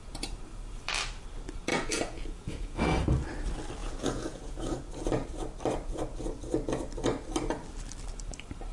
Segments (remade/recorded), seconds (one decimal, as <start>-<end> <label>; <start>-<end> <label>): 0.0-1.7 recorded; 1.7-2.8 remade; 2.8-3.8 recorded; 3.8-4.8 remade; 4.8-8.7 recorded